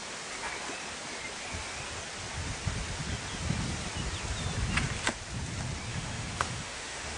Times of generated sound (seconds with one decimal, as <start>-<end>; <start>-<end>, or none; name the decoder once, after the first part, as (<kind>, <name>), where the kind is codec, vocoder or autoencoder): 5.9-7.2 (autoencoder, DAC-VAE)